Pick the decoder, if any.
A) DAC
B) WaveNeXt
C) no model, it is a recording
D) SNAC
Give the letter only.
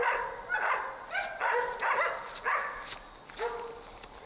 C